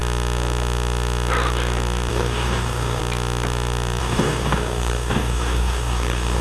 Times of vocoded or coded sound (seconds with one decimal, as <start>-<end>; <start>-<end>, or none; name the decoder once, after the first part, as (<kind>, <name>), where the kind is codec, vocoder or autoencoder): 2.1-3.0 (codec, DAC); 4.0-6.4

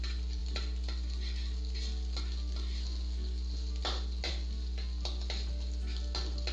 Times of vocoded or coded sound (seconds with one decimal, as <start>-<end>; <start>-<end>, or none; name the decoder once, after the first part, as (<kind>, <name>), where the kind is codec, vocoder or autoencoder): none

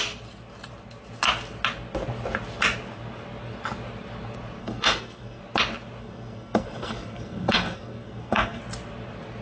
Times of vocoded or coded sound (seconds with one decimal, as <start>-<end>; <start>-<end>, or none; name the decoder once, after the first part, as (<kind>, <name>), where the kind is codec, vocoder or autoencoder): 4.6-5.4 (codec, SNAC); 6.0-8.6

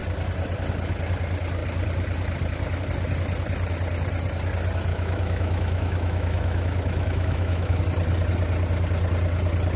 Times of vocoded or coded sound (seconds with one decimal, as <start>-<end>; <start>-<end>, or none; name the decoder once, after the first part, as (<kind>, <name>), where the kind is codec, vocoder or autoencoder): 4.9-7.8 (autoencoder, DAC-VAE)

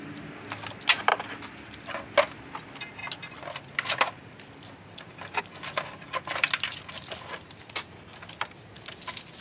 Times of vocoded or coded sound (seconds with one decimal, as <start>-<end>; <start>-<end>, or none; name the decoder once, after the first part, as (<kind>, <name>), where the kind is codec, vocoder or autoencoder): none